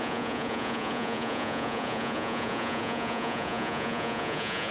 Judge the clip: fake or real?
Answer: fake